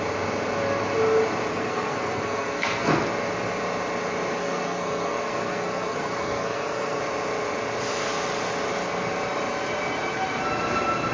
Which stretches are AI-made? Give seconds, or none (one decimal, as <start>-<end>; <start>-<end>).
1.5-3.0; 4.4-7.0